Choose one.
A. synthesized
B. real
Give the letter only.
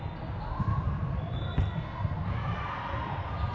B